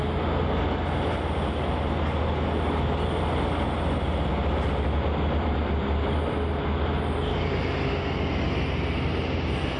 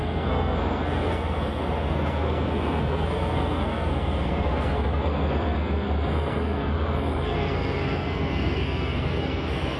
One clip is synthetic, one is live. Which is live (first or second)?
first